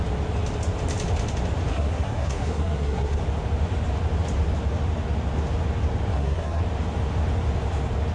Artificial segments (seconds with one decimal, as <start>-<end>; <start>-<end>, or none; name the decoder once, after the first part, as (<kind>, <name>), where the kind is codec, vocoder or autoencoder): 1.7-3.2 (codec, SNAC); 6.1-6.6